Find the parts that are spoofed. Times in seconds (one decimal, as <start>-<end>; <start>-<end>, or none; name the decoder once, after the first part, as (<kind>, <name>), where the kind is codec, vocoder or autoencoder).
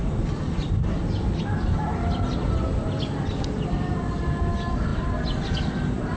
none